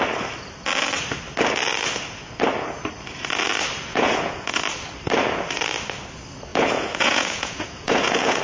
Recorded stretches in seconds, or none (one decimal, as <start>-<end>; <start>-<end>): 0.0-3.9; 4.6-6.5